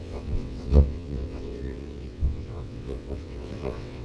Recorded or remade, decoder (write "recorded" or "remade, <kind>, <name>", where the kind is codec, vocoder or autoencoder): remade, vocoder, WaveNeXt